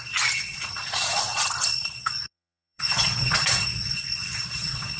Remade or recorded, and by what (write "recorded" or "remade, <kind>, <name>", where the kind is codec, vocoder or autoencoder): remade, vocoder, Vocos